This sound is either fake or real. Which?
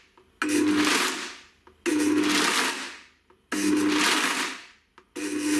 real